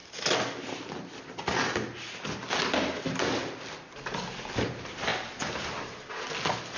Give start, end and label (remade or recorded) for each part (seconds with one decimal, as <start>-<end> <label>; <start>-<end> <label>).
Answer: 0.0-6.8 recorded